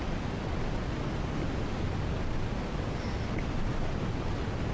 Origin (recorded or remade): recorded